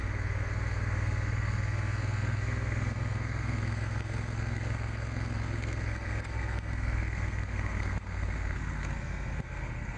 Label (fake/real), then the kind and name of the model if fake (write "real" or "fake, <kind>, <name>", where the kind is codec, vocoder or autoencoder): fake, codec, SNAC